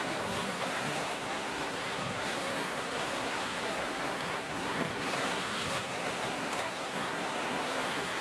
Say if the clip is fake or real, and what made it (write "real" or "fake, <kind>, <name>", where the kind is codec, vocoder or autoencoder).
fake, codec, SNAC